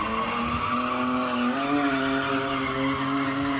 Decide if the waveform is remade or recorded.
recorded